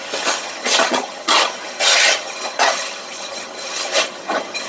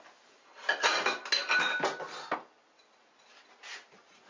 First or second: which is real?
second